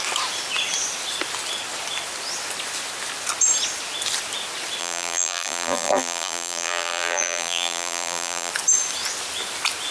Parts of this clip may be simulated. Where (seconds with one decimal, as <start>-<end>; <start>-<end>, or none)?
4.8-8.5